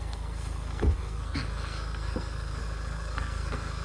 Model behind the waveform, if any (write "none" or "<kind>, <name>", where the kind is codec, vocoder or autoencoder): codec, SNAC